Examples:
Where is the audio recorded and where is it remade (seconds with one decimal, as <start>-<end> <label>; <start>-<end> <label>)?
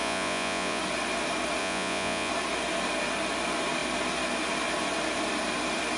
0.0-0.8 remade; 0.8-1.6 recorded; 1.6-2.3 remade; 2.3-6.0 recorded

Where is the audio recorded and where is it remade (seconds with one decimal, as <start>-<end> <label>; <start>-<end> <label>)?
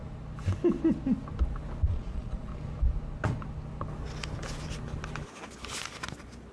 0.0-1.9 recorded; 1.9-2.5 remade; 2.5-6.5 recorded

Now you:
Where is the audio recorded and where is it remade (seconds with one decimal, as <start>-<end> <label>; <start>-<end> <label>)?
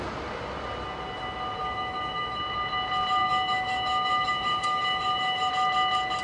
0.0-1.6 recorded; 1.6-2.4 remade; 2.4-3.2 recorded; 3.2-5.5 remade; 5.5-6.2 recorded